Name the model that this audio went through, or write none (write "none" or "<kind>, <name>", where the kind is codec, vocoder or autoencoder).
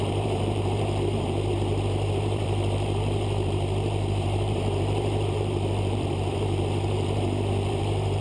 vocoder, BigVGAN v2